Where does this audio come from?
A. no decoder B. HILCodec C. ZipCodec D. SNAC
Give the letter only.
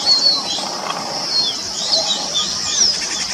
A